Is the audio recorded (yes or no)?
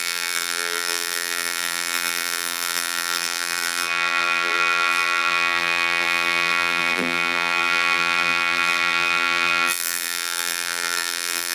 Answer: no